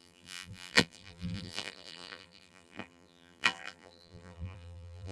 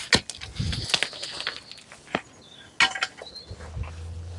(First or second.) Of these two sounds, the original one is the second